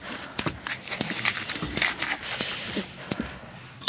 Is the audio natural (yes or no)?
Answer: no